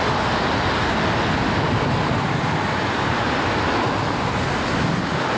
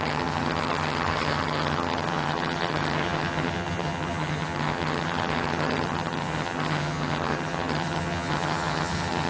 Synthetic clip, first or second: second